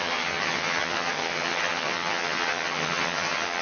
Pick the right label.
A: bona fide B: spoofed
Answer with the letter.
B